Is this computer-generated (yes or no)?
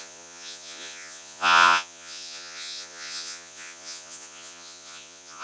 yes